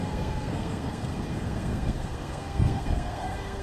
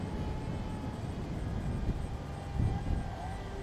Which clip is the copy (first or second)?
first